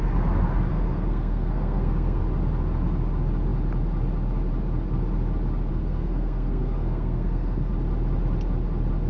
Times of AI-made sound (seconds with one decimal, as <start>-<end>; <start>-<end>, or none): 0.7-2.2; 5.7-7.7